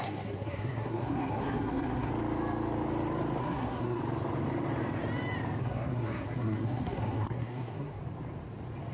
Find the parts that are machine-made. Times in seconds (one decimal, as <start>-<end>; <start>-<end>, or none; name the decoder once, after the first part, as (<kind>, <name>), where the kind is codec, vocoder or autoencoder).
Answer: 0.0-2.1 (codec, SNAC); 3.4-4.0; 5.6-8.0

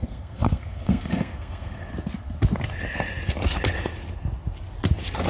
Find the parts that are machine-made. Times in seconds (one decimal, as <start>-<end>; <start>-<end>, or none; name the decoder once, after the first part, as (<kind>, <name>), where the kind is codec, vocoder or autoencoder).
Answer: 0.0-1.9 (codec, SNAC)

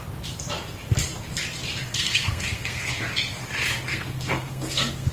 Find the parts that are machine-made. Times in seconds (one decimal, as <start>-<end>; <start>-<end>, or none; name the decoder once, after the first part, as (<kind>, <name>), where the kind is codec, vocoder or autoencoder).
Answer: 1.9-2.9 (codec, SNAC); 3.9-5.1